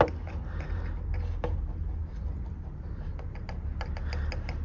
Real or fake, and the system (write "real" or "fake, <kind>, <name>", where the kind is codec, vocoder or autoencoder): real